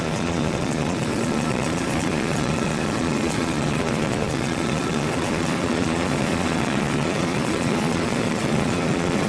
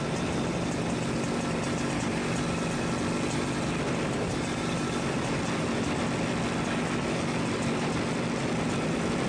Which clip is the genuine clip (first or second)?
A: second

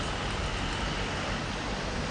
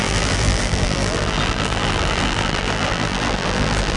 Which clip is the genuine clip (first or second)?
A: first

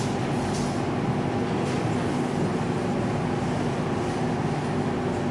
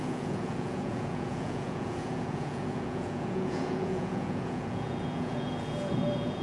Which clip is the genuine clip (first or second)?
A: first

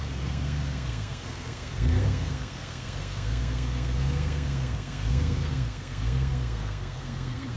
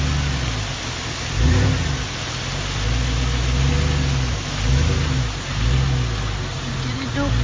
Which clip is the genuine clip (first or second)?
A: second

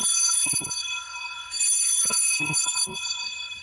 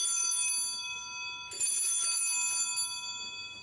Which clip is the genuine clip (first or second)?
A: second